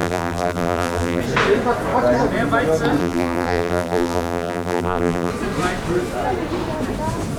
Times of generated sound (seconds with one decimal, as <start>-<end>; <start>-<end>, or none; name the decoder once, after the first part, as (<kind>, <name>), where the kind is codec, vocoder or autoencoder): 0.0-1.2 (vocoder, BigVGAN v2); 3.0-5.3